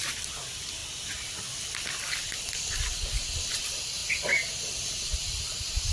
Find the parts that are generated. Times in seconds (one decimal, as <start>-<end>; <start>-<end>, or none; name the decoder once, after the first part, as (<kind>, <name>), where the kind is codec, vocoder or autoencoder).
none